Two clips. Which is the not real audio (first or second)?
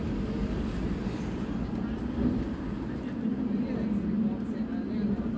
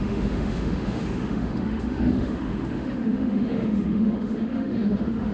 second